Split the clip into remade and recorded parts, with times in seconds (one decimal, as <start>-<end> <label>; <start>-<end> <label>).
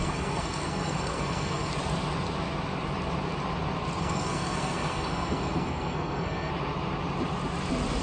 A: 0.0-1.7 remade; 1.7-4.0 recorded; 4.0-6.5 remade; 6.5-8.0 recorded